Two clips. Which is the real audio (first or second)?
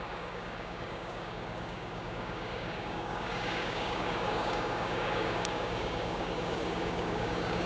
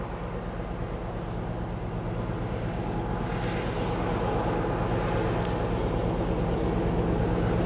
second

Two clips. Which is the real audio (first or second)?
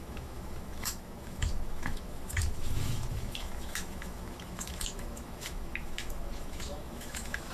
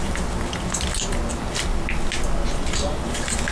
second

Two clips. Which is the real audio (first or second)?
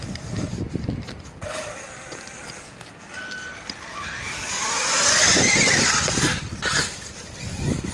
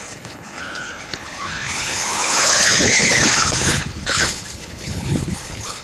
first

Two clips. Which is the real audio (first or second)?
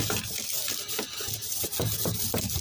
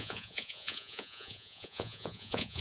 first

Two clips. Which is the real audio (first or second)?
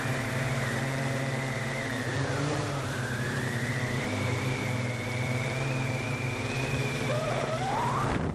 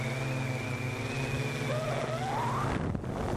second